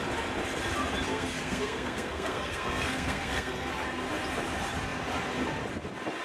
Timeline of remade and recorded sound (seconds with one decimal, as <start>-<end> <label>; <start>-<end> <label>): 0.0-1.1 recorded; 1.1-3.7 remade; 3.7-6.2 recorded